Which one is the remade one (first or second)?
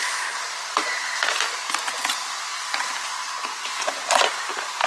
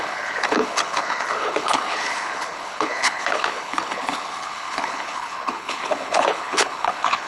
second